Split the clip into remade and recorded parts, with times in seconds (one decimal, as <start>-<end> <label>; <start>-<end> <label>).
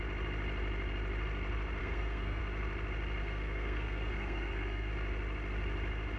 0.0-1.8 recorded; 1.8-2.4 remade; 2.4-3.2 recorded; 3.2-4.9 remade; 4.9-6.2 recorded